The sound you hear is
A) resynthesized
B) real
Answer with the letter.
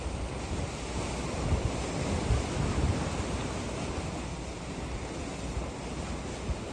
B